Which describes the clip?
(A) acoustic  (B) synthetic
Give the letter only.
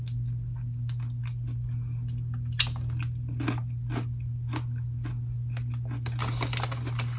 A